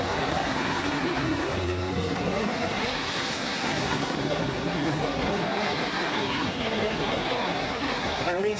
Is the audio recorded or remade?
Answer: remade